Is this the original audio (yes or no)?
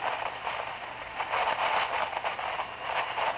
yes